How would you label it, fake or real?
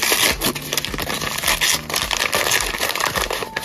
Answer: real